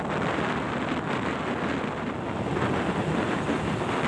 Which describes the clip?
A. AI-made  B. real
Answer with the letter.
B